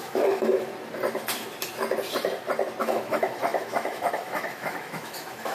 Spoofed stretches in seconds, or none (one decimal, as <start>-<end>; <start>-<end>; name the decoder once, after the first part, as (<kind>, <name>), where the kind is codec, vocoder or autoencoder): 0.0-0.7 (autoencoder, DAC-VAE); 2.8-5.5